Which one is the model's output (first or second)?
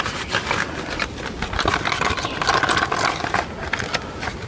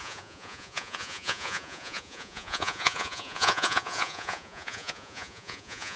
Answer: second